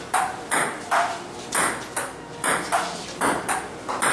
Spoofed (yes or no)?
no